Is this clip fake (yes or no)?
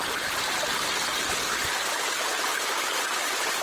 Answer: no